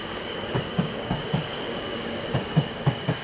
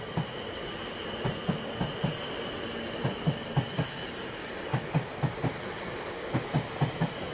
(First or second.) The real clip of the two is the second